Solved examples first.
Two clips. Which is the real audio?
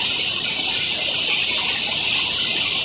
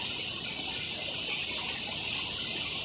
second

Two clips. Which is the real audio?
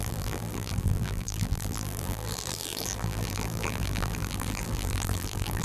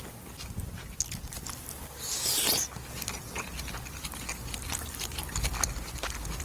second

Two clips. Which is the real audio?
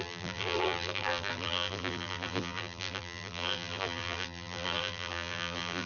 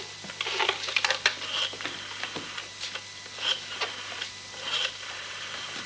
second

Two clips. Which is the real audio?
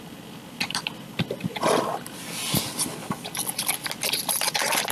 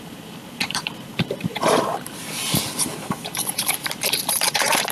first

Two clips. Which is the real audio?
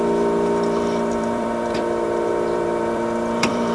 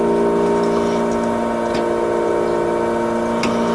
second